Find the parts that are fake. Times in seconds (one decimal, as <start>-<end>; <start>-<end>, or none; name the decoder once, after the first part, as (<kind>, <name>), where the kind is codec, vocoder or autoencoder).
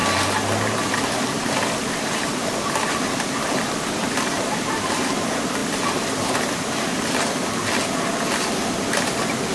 none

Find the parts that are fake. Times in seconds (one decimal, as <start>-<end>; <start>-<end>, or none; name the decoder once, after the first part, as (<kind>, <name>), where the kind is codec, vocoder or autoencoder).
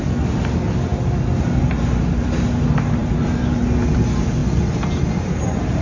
none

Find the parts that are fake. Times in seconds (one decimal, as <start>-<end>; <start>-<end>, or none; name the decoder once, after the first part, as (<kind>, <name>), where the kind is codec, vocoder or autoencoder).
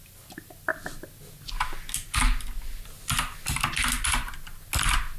none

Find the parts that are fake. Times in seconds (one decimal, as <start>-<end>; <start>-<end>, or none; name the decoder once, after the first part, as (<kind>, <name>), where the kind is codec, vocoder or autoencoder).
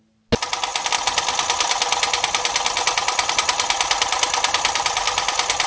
none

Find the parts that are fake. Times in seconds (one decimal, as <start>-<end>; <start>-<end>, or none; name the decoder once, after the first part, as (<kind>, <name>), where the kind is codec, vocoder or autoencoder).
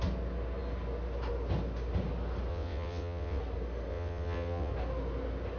2.5-3.4 (vocoder, WaveNeXt); 3.9-4.7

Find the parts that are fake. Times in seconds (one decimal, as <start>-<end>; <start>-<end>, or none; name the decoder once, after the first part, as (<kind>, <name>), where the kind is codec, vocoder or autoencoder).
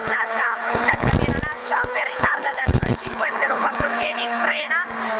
0.0-1.1 (codec, HILCodec); 1.6-4.7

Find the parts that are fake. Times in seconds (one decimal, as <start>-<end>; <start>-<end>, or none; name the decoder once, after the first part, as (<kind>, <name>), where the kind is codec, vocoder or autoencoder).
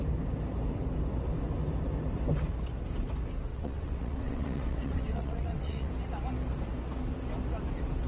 3.5-5.9 (vocoder, WaveNeXt)